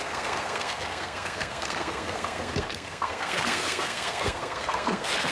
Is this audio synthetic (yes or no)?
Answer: yes